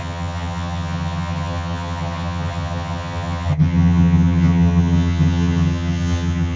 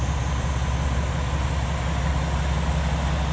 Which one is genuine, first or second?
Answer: second